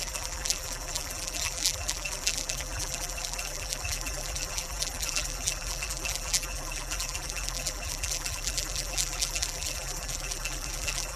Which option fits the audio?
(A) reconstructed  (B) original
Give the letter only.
A